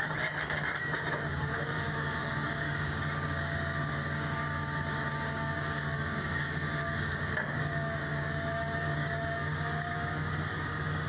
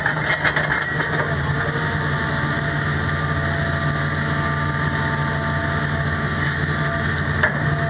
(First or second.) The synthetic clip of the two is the first